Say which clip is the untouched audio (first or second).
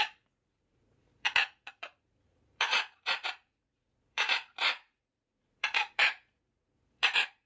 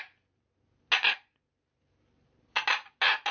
second